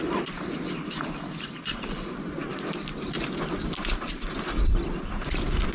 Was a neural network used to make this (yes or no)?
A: yes